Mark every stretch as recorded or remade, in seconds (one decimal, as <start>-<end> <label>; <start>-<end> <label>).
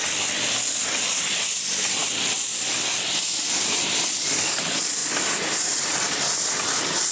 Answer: 0.0-5.0 recorded; 5.0-5.9 remade; 5.9-7.1 recorded